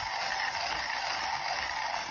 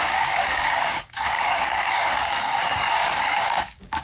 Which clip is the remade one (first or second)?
second